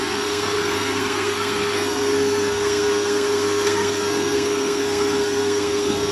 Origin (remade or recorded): remade